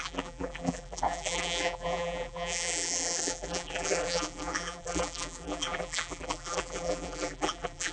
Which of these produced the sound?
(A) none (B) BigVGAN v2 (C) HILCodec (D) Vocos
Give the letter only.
B